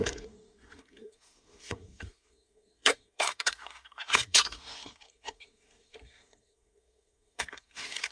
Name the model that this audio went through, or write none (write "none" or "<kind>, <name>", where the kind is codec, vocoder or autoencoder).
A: codec, SNAC